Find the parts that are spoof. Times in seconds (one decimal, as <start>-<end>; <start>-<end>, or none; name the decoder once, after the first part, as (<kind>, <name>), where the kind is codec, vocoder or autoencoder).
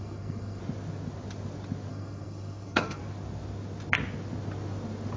0.0-0.6 (codec, SNAC); 1.9-3.0